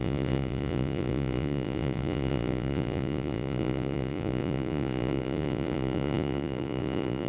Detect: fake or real fake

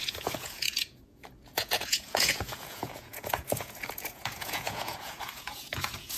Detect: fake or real fake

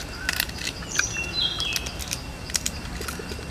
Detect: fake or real real